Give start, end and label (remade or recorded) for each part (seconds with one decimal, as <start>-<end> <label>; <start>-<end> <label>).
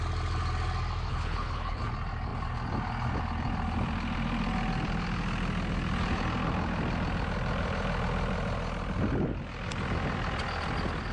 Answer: 0.0-1.1 recorded; 1.1-1.8 remade; 1.8-11.1 recorded